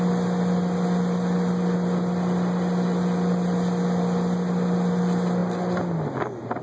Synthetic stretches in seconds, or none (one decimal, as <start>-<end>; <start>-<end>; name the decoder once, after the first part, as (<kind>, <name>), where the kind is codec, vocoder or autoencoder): none